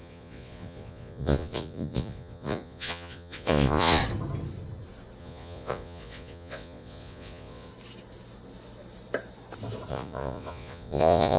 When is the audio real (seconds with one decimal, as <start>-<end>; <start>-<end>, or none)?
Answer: 4.0-5.2; 7.7-9.9